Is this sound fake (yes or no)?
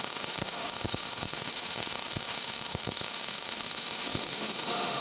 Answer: yes